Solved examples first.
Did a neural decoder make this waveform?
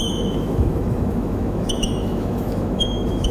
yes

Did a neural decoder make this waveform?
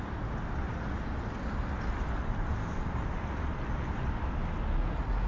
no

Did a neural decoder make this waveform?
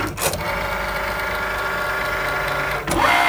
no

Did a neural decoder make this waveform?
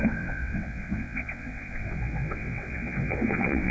yes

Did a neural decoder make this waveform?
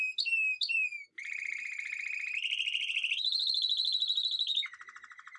no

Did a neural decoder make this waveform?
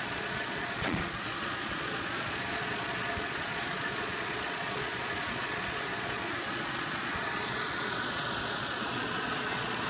yes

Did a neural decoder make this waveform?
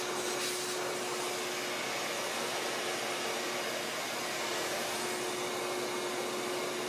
no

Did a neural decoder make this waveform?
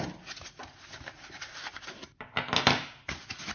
no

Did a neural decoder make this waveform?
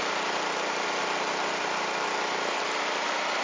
yes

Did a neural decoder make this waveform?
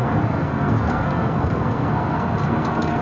yes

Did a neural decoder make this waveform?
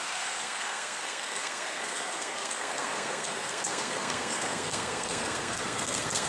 yes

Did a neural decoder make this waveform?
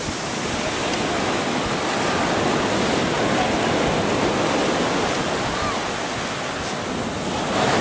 no